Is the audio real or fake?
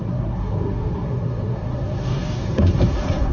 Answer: fake